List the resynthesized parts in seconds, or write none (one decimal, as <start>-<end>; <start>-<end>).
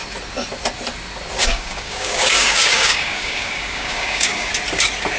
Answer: 1.4-4.5